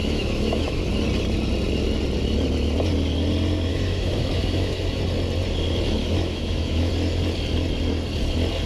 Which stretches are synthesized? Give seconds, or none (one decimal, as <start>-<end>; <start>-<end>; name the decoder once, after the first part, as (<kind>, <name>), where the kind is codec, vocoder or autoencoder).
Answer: 0.0-0.9 (autoencoder, DAC-VAE); 3.7-5.0; 6.0-6.9